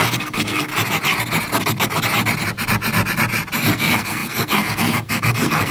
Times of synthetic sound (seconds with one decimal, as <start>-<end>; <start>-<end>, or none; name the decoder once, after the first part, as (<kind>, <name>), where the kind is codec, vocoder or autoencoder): 0.0-0.7 (codec, SNAC); 3.7-5.7